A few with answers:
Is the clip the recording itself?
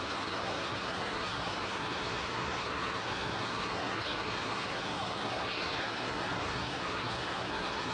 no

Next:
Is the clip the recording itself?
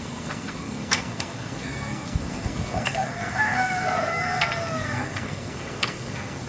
no